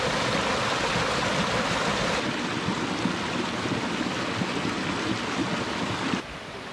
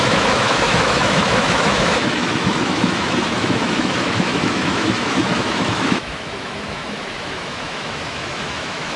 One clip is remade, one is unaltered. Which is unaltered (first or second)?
first